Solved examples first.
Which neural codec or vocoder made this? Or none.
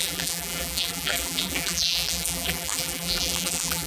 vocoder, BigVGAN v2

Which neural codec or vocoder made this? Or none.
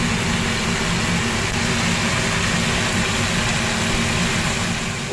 none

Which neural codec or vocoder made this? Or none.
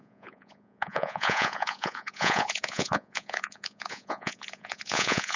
vocoder, Vocos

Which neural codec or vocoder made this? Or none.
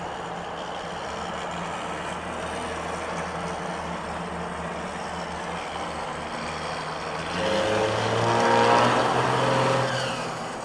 none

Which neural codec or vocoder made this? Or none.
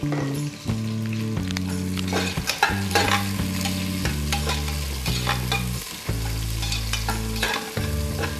none